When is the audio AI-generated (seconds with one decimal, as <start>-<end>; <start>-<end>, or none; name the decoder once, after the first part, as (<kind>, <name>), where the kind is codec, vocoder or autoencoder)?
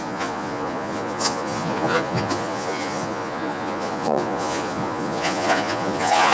0.0-6.3 (vocoder, Vocos)